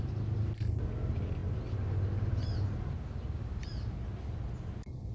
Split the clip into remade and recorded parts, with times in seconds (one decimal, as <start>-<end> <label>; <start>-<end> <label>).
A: 0.0-5.1 recorded